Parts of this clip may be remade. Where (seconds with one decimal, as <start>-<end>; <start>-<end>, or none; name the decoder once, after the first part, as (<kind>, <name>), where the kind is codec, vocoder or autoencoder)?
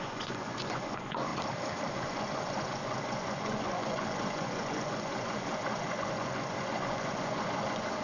0.0-1.3 (vocoder, Vocos); 1.9-8.0